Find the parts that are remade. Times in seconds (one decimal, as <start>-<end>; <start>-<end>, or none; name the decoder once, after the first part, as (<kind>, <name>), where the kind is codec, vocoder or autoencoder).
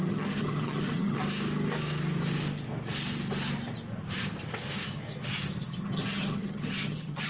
0.0-1.2 (vocoder, HiFi-GAN); 5.6-7.3